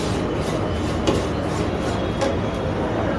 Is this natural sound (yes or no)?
yes